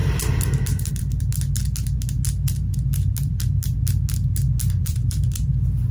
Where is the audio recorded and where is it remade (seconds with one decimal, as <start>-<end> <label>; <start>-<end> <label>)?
0.0-1.3 remade; 1.3-4.8 recorded; 4.8-5.9 remade